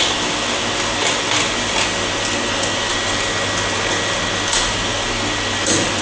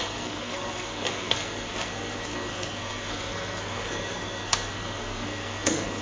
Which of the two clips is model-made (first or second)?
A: second